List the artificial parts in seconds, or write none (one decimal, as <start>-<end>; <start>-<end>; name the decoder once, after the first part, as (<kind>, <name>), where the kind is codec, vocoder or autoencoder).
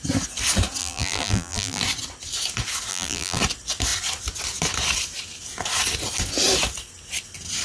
0.8-1.8 (vocoder, BigVGAN v2); 2.9-3.4